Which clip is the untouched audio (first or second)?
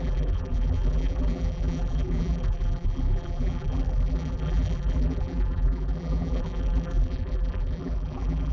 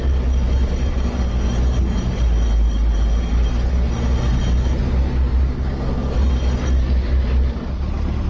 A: second